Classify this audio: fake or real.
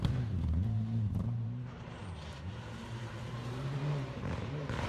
fake